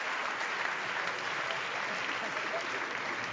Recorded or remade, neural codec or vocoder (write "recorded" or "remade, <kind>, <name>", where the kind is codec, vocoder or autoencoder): recorded